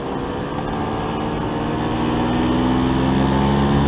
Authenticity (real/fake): real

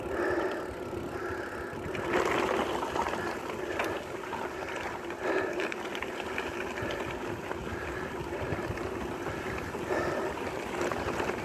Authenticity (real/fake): real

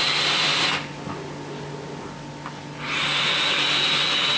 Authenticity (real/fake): real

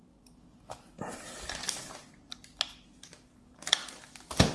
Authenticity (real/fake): real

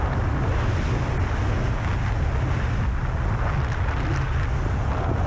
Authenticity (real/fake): real